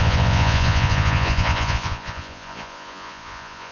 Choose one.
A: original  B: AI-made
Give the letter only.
B